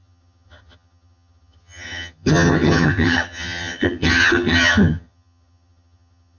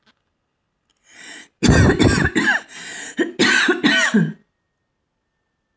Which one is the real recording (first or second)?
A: second